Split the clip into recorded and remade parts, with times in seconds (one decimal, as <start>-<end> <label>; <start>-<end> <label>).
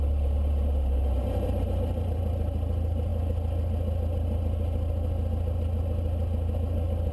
0.0-3.1 remade; 3.1-7.1 recorded